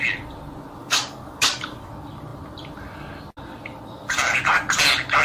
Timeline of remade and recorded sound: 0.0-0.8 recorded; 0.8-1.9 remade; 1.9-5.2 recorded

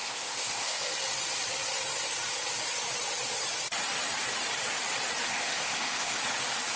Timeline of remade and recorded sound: 0.0-0.9 remade; 0.9-5.3 recorded; 5.3-6.2 remade; 6.2-6.8 recorded